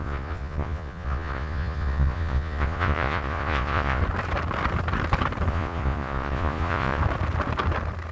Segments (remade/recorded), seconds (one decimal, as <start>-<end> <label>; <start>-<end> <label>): 0.0-4.0 remade; 4.0-5.5 recorded; 5.5-7.0 remade; 7.0-8.1 recorded

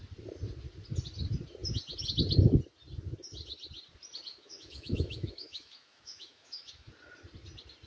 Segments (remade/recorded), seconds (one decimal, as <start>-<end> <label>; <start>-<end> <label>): 0.0-4.3 recorded; 4.3-6.9 remade; 6.9-7.9 recorded

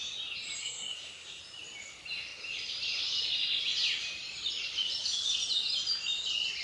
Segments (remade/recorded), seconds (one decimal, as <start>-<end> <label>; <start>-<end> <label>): 0.0-0.6 recorded; 0.6-1.4 remade; 1.4-6.6 recorded

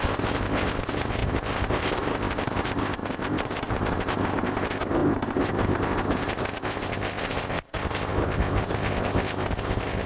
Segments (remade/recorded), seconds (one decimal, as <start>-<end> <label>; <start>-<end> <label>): 0.0-10.1 remade

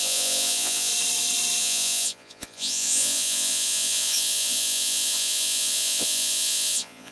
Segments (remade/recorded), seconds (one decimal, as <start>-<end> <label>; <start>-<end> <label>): 0.0-0.9 remade; 0.9-1.6 recorded; 1.6-7.1 remade